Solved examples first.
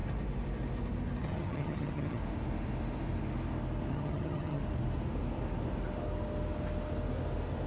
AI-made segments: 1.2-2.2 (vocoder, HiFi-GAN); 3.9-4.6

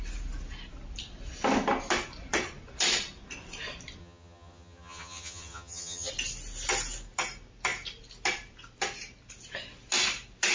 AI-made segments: 4.0-6.1 (vocoder, HiFi-GAN)

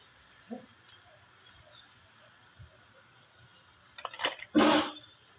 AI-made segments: none

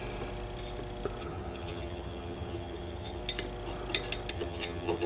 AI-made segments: 1.2-3.2 (vocoder, HiFi-GAN); 4.3-5.1

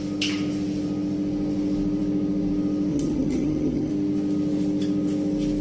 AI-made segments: 2.9-3.9 (vocoder, HiFi-GAN)

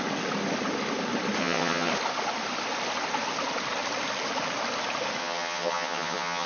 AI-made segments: 1.4-1.9 (vocoder, HiFi-GAN); 5.2-6.5

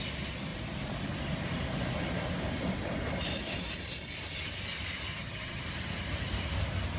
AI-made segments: 5.1-5.6 (vocoder, HiFi-GAN)

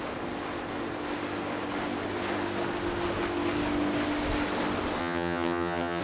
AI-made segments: 5.0-6.0 (vocoder, HiFi-GAN)